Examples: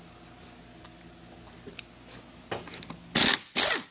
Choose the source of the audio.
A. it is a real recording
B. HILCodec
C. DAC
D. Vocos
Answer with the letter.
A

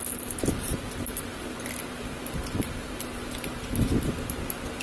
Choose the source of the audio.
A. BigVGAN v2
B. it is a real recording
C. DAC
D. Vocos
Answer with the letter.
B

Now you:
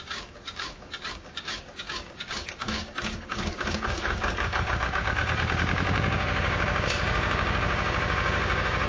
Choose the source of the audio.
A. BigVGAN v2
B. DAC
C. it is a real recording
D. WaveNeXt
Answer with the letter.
B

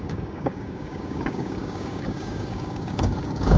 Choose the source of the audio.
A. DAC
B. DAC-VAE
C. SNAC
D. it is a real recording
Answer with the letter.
A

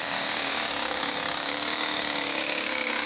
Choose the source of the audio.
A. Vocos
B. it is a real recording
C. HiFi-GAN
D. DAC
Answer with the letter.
D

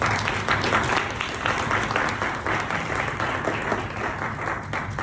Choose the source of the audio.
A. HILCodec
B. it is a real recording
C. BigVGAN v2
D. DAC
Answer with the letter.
B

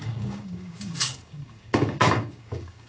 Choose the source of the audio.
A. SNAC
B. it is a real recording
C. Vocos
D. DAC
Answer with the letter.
D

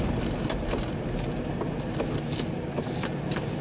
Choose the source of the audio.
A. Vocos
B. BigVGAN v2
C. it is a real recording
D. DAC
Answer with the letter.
C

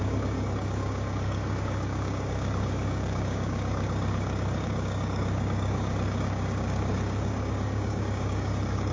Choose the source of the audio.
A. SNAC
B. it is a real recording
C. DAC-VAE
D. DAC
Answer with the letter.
D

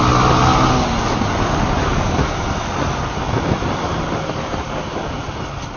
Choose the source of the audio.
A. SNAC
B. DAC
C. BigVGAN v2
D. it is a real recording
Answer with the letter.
D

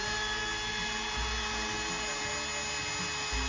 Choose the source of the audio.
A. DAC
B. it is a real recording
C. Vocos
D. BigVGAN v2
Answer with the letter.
B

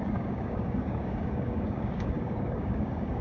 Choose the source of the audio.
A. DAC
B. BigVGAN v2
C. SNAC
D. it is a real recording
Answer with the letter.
A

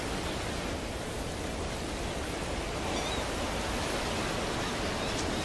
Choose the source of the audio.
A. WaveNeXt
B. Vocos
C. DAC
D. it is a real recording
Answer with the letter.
D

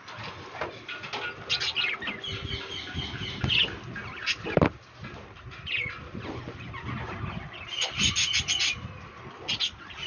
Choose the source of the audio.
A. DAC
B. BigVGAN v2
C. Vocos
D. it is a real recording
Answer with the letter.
D